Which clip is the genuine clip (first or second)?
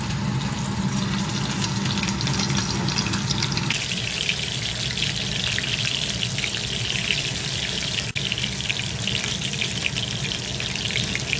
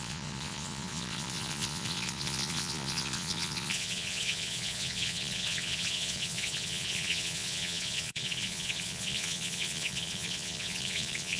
first